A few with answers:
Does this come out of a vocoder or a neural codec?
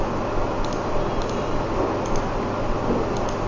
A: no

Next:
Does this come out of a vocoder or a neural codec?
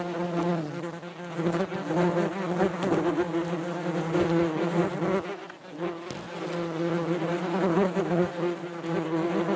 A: no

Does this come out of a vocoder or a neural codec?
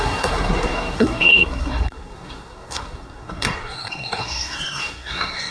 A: yes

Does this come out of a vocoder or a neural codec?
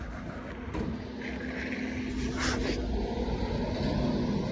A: no